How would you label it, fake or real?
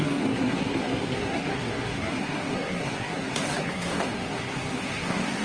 fake